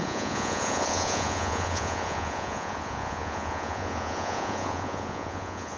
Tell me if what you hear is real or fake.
fake